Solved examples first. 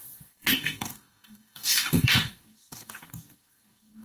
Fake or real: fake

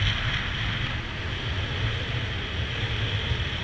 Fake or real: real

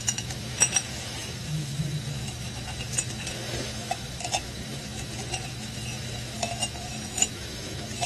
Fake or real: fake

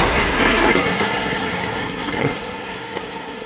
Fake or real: fake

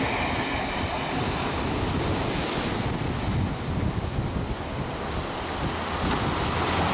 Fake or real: real